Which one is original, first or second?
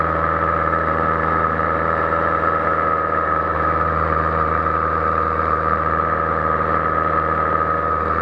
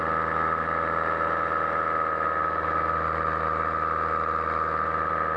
second